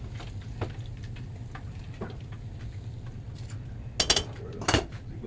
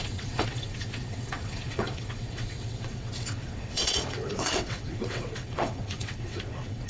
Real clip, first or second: first